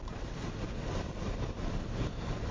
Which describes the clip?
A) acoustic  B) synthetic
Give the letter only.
A